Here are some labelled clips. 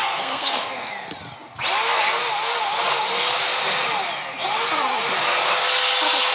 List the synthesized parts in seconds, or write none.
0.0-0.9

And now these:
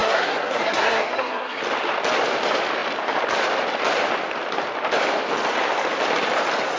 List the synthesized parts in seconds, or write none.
0.0-1.6